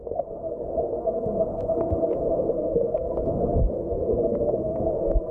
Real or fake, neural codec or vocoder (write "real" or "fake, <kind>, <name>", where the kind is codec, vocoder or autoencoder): fake, codec, SNAC